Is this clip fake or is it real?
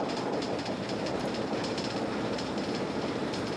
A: fake